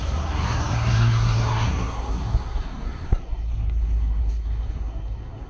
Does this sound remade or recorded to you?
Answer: remade